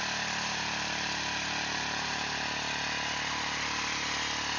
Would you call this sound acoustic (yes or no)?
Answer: yes